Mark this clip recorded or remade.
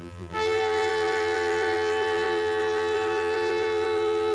remade